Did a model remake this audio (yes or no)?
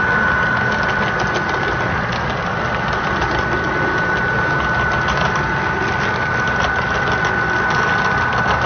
no